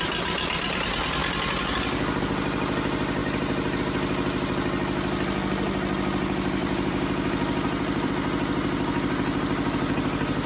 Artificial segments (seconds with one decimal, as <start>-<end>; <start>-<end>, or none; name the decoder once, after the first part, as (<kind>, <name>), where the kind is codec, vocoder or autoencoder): 6.6-8.1 (vocoder, BigVGAN v2)